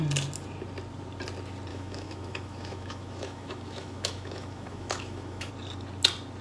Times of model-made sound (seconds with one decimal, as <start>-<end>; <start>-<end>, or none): 1.7-5.5